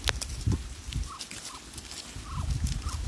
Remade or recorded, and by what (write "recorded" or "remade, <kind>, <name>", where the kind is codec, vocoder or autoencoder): recorded